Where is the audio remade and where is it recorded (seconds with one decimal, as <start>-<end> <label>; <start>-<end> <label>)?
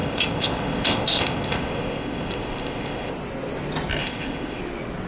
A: 0.0-3.1 remade; 3.1-4.0 recorded; 4.0-4.6 remade; 4.6-5.1 recorded